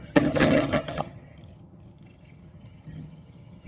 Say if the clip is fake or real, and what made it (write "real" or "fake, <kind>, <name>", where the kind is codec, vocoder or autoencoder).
fake, vocoder, HiFi-GAN